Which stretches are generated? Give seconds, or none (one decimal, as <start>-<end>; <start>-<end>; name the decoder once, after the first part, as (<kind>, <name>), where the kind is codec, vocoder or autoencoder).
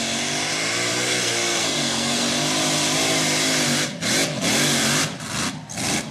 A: 0.9-2.3 (codec, SNAC)